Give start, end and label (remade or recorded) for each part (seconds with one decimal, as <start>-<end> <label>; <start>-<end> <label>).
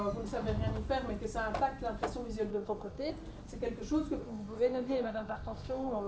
0.0-2.5 recorded; 2.5-3.1 remade; 3.1-4.2 recorded; 4.2-6.1 remade